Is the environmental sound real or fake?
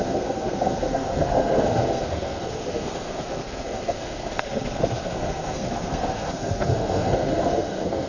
fake